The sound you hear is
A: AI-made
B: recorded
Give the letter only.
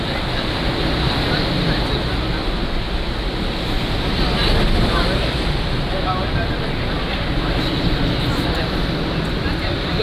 B